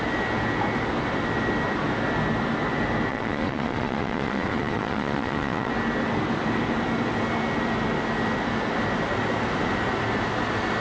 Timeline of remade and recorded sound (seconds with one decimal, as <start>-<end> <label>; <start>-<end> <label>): 0.0-3.1 recorded; 3.1-5.7 remade; 5.7-10.8 recorded

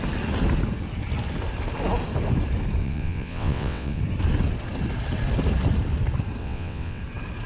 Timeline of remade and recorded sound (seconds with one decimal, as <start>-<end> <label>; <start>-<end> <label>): 0.0-2.8 recorded; 2.8-4.0 remade; 4.0-6.4 recorded; 6.4-7.0 remade; 7.0-7.5 recorded

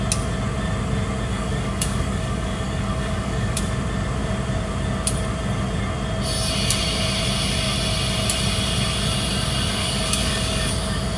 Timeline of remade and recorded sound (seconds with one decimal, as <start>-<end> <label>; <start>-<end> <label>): 0.0-1.3 recorded; 1.3-3.6 remade; 3.6-9.8 recorded; 9.8-10.7 remade; 10.7-11.2 recorded

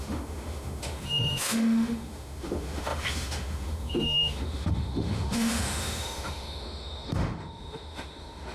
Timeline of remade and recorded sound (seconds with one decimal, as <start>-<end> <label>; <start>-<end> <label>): 0.0-8.5 remade

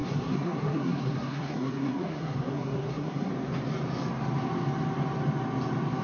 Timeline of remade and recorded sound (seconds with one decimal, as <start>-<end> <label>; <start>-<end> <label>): 0.0-3.3 remade; 3.3-6.0 recorded

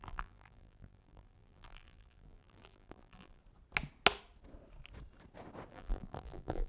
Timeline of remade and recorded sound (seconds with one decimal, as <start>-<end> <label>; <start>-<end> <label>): 0.0-3.4 remade; 3.4-5.7 recorded; 5.7-6.7 remade

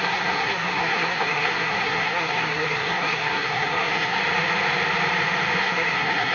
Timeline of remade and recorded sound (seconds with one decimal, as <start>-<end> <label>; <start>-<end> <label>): 0.0-4.2 remade; 4.2-5.6 recorded; 5.6-6.3 remade